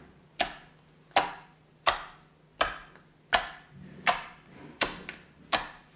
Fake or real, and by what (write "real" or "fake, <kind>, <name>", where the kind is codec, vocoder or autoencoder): real